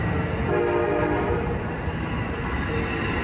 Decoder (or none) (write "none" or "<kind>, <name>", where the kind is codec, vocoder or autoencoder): none